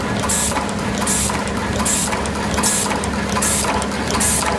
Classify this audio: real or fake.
real